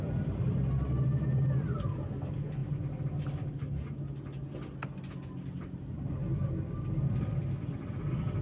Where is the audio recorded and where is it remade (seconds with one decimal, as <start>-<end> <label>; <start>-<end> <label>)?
0.0-8.4 recorded